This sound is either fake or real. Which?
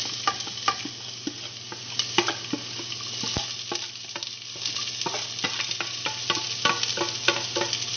real